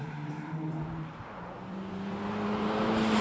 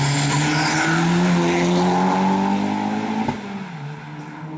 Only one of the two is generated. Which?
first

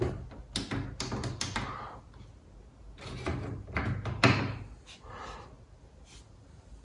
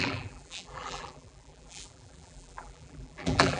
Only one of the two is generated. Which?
second